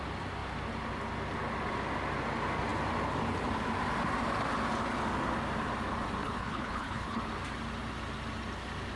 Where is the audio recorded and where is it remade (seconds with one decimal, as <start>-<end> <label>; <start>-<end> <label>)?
0.0-6.2 recorded; 6.2-7.2 remade; 7.2-9.0 recorded

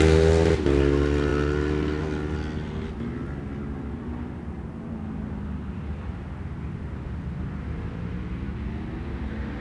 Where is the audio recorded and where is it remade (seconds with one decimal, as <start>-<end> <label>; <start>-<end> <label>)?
0.0-9.6 recorded

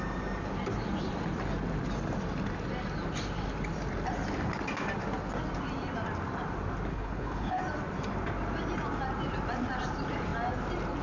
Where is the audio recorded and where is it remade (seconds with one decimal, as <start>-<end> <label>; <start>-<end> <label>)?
0.0-6.9 recorded; 6.9-7.6 remade; 7.6-11.0 recorded